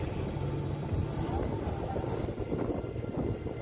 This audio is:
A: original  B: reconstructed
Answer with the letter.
A